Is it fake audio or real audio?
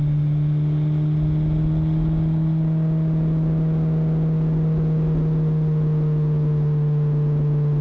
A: real